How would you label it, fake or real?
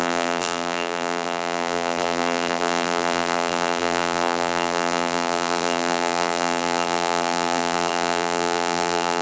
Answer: fake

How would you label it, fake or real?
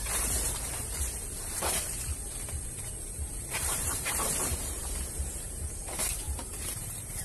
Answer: fake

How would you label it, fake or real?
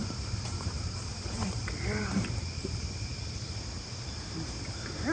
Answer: fake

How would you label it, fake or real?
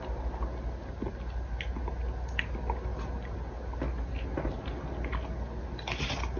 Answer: real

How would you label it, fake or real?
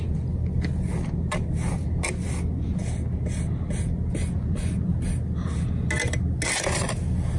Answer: real